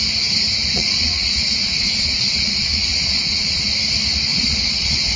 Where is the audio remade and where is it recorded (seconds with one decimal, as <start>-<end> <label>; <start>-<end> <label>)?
0.0-0.7 recorded; 0.7-3.7 remade; 3.7-4.3 recorded; 4.3-5.2 remade